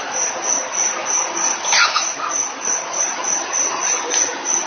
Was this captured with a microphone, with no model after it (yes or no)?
yes